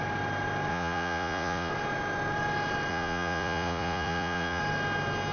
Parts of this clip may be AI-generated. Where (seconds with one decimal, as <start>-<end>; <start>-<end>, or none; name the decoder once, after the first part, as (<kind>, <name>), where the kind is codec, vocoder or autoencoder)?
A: 0.7-1.7 (vocoder, Vocos); 2.9-4.6